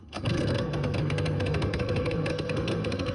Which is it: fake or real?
fake